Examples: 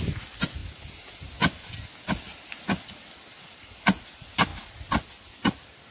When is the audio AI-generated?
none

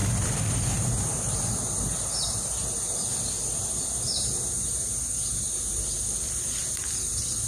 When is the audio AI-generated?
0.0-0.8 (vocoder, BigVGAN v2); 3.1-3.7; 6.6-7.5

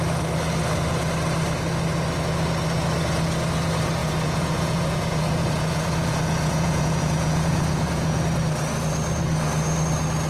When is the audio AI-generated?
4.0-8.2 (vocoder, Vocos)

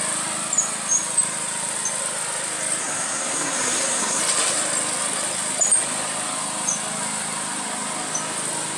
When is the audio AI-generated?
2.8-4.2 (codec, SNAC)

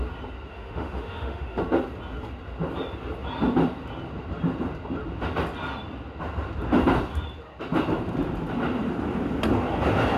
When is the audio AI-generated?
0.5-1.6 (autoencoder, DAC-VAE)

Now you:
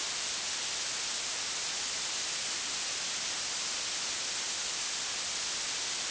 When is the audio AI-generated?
none

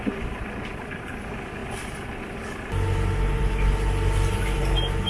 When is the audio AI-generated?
none